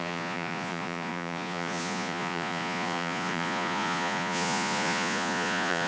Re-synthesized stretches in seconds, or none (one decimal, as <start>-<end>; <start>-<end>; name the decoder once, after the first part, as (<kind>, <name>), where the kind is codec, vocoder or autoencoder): 0.0-5.9 (vocoder, Vocos)